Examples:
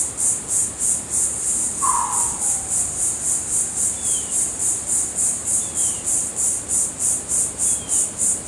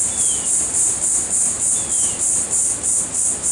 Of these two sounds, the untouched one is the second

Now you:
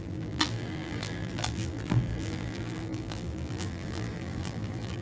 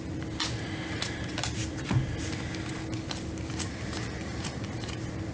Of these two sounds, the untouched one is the second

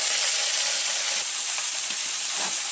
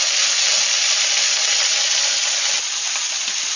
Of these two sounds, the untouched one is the second